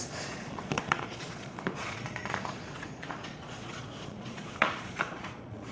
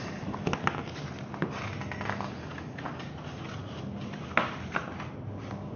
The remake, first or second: first